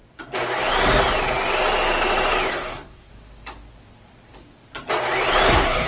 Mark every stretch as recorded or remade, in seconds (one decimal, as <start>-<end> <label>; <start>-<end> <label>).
0.0-2.5 recorded; 2.5-3.1 remade; 3.1-5.5 recorded; 5.5-5.9 remade